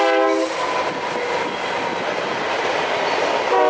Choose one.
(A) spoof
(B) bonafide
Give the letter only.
B